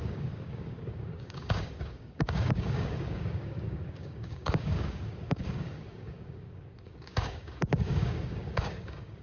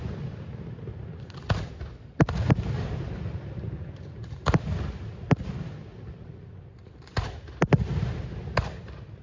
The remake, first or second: first